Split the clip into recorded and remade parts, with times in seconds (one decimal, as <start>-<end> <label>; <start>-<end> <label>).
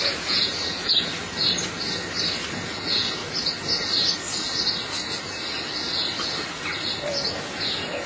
0.0-1.1 remade; 1.1-2.7 recorded; 2.7-3.2 remade; 3.2-7.4 recorded; 7.4-8.1 remade